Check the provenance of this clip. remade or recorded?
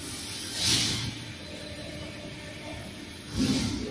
recorded